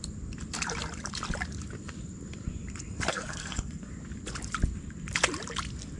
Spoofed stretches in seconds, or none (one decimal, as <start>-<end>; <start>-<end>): 3.1-3.9